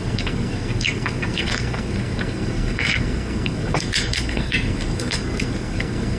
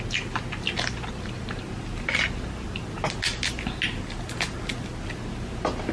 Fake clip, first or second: first